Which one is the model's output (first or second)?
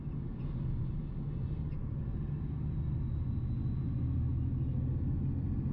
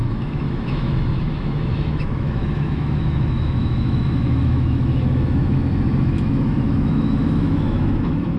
second